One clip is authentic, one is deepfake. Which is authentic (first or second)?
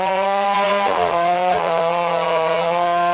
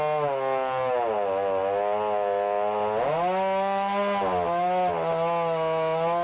second